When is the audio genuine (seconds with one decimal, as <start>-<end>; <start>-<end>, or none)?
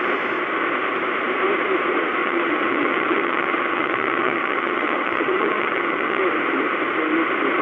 0.0-2.2; 6.2-7.6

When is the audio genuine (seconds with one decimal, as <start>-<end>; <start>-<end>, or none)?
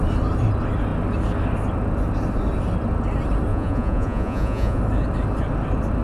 0.0-3.5; 4.8-6.0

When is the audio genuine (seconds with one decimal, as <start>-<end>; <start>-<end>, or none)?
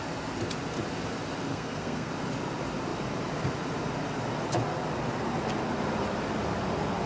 0.0-1.5; 2.1-7.1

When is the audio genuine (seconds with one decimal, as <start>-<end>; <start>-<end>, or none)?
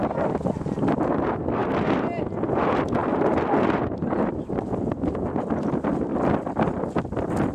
0.0-7.5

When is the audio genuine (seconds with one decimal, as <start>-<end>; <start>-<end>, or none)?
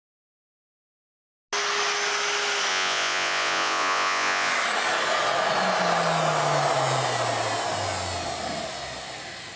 0.0-2.7; 4.5-9.6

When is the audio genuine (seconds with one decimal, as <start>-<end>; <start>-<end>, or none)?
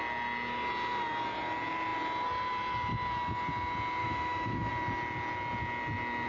0.0-4.0; 4.7-6.3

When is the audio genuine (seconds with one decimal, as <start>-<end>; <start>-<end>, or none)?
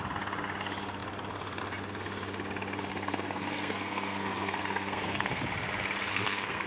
0.0-2.9; 5.4-6.1